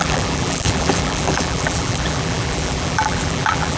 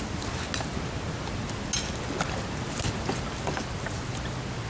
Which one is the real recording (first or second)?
second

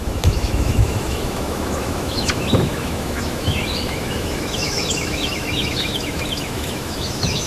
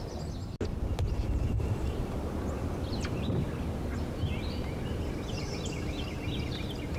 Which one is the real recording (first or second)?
second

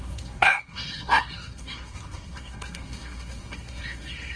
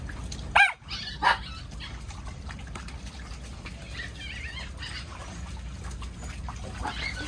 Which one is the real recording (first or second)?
second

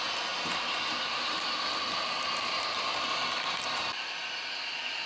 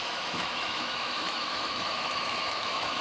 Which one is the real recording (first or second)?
first